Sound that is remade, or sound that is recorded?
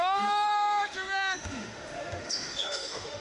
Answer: remade